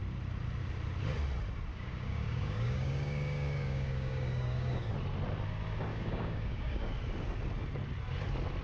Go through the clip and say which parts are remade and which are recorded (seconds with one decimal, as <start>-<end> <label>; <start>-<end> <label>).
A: 0.0-1.7 recorded; 1.7-4.9 remade; 4.9-5.9 recorded; 5.9-6.9 remade; 6.9-8.6 recorded